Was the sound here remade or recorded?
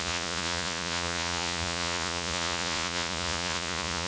remade